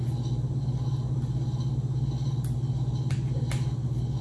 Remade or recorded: recorded